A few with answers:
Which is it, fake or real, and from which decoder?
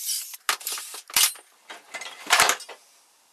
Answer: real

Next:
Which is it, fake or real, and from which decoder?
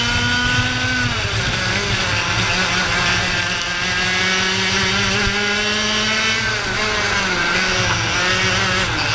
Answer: real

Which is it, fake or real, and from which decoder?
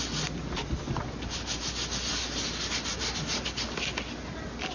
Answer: real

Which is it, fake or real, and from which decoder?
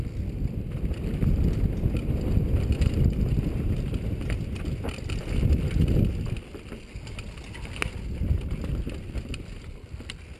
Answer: real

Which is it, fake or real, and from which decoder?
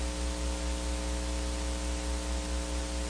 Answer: real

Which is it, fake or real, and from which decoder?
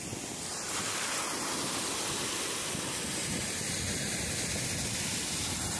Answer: real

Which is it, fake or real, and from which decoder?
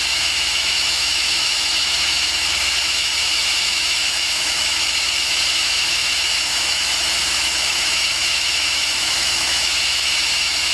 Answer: fake, autoencoder, DAC-VAE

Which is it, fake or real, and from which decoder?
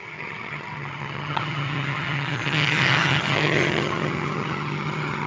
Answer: fake, vocoder, HiFi-GAN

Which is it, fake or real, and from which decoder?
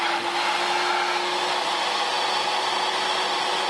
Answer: real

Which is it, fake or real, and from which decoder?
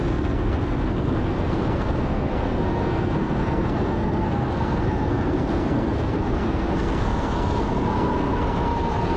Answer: fake, codec, SNAC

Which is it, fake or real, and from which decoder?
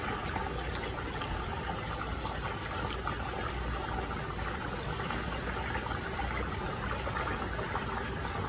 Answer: real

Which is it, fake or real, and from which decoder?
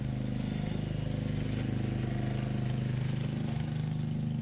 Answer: real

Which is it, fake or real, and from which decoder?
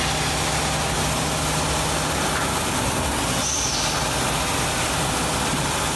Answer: real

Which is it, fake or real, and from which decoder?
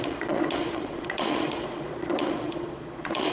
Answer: fake, vocoder, Vocos